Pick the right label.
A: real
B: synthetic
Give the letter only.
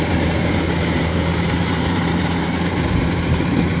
B